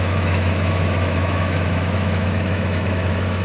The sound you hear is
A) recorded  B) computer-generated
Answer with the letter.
B